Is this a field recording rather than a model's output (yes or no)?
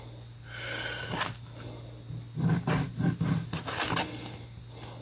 yes